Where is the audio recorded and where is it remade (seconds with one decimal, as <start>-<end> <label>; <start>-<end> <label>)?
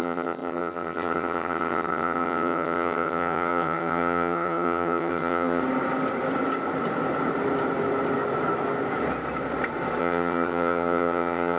0.0-5.6 remade; 5.6-10.0 recorded; 10.0-11.6 remade